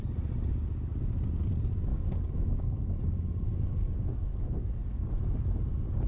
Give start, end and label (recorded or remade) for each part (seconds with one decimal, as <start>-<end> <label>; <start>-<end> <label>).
0.0-1.9 recorded; 1.9-5.1 remade; 5.1-6.1 recorded